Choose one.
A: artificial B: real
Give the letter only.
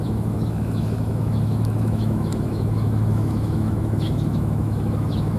A